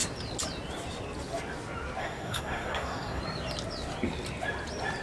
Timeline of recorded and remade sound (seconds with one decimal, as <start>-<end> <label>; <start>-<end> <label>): 0.0-2.0 recorded; 2.0-3.2 remade; 3.2-5.0 recorded